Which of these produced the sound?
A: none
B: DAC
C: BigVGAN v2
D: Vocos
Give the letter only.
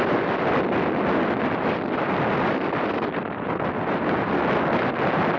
A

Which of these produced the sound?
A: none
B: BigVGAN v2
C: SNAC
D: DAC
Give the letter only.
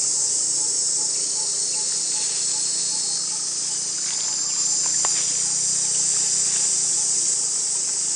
A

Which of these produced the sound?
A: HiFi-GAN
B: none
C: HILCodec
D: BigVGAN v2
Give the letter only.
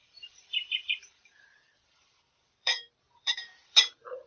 D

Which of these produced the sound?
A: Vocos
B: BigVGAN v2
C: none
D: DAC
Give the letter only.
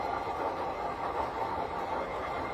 B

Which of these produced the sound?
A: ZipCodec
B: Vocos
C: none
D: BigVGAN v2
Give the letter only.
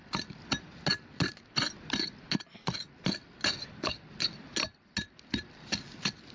C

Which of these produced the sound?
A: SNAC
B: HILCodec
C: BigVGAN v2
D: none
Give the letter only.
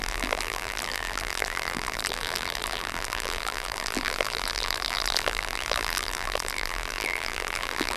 C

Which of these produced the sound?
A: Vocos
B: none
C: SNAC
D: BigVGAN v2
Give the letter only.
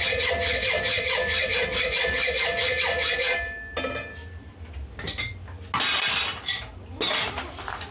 B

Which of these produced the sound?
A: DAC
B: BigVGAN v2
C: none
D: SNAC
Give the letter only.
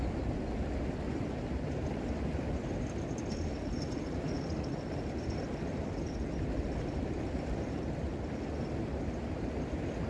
C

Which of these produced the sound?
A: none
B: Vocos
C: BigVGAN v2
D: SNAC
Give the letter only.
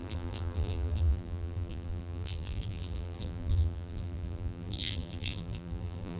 C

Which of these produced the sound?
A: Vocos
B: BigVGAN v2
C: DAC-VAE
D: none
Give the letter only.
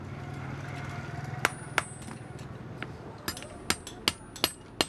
D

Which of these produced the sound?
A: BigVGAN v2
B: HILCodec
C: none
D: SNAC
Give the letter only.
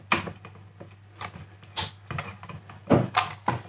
C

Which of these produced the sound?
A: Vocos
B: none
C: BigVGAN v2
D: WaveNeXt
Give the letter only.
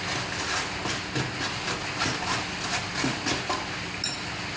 B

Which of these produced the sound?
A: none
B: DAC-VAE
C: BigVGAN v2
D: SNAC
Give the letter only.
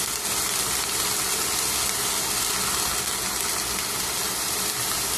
A